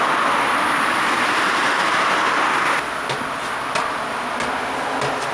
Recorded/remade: recorded